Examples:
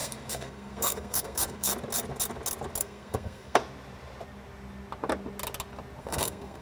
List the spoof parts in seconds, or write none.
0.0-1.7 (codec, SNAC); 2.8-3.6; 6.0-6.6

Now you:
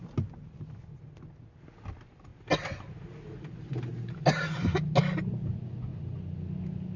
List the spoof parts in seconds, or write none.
none

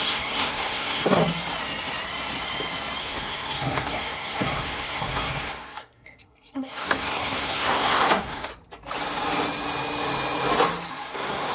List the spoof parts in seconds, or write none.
0.0-1.2 (codec, SNAC); 3.0-8.5; 10.9-11.5